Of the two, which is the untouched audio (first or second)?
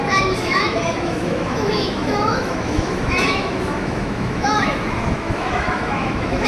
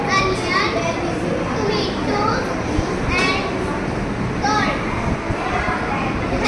second